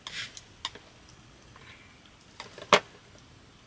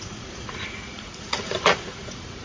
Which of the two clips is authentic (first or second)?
first